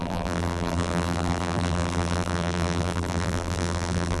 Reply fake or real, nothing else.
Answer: fake